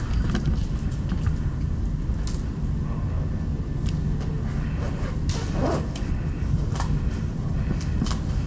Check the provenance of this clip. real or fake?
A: real